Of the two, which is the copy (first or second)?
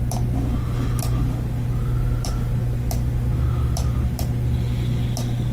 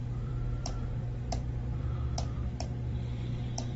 second